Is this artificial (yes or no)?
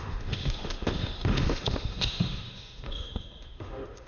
yes